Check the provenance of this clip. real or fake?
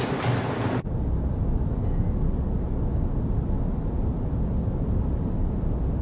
real